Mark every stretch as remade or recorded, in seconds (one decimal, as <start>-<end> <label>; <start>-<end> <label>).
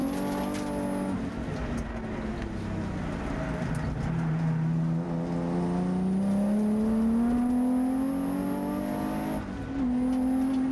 0.0-10.7 recorded